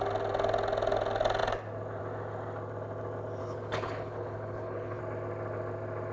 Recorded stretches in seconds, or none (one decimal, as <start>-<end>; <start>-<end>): 0.0-3.4; 5.0-6.1